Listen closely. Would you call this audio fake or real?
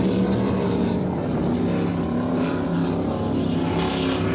real